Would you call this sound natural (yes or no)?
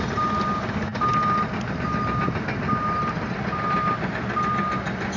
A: yes